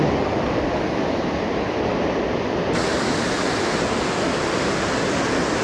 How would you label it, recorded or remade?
recorded